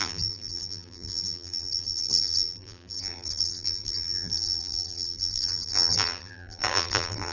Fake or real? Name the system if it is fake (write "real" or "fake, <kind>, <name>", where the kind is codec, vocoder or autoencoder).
fake, vocoder, BigVGAN v2